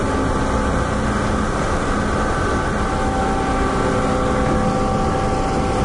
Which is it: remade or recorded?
recorded